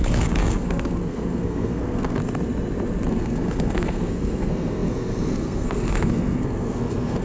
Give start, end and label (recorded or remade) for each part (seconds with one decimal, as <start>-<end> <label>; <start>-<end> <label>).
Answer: 0.0-2.2 remade; 2.2-3.1 recorded; 3.1-7.2 remade